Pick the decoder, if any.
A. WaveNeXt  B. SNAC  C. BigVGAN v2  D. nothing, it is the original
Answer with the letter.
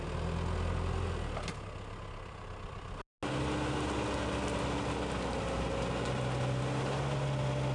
D